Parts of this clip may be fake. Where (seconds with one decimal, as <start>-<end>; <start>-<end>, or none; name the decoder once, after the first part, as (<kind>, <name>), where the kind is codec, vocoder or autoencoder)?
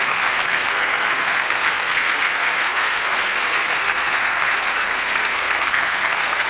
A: 0.0-6.5 (codec, SNAC)